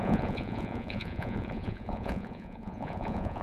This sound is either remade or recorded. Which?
remade